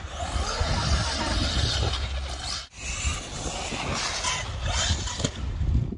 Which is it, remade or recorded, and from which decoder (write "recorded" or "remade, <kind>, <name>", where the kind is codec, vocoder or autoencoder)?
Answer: recorded